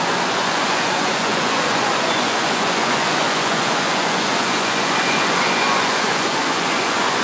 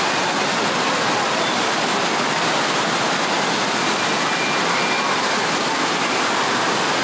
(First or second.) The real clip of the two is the second